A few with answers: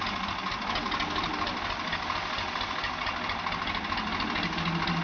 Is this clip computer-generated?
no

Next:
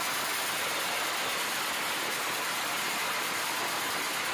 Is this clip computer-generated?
no